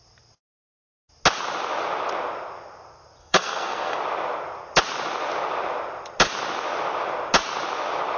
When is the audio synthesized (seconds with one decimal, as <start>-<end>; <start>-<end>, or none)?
3.2-4.0